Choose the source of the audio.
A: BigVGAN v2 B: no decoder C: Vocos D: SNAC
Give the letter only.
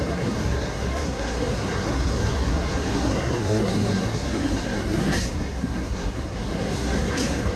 D